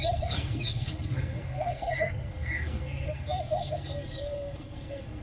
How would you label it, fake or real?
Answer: fake